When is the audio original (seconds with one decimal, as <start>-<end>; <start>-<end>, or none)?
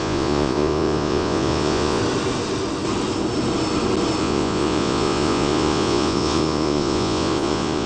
2.0-4.2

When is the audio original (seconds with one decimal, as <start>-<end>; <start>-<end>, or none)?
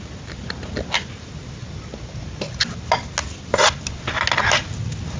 0.0-5.2